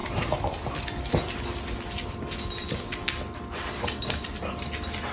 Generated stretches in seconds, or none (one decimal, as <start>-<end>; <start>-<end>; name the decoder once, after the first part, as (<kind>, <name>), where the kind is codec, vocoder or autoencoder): 0.0-0.7 (vocoder, BigVGAN v2)